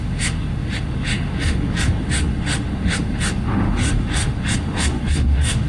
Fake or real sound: fake